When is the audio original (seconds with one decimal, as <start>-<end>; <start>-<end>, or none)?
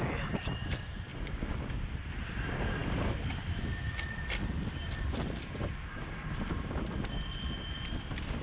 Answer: 0.0-8.4